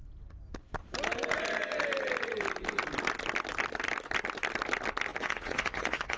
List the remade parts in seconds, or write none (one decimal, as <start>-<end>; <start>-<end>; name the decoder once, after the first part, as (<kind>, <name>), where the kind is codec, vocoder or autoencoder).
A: 5.1-6.2 (vocoder, Vocos)

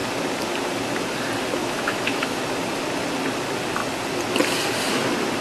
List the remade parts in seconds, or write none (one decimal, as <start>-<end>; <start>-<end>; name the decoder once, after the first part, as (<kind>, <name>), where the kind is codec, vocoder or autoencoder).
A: 1.6-2.4 (autoencoder, DAC-VAE)

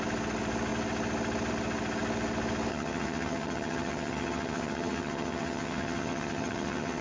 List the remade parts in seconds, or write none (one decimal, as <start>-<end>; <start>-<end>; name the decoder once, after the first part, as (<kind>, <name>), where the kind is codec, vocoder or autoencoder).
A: 2.7-7.0 (vocoder, HiFi-GAN)

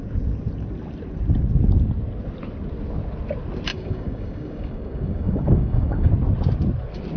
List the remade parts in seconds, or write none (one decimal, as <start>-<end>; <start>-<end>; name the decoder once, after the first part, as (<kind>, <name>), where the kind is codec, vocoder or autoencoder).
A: 3.7-6.1 (codec, DAC)

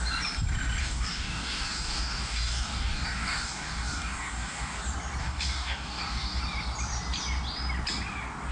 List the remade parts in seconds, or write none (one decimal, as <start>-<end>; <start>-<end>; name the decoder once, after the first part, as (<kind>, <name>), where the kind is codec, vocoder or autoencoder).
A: 0.8-4.8 (codec, DAC); 5.2-6.4